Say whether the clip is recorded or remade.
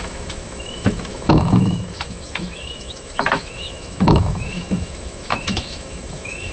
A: remade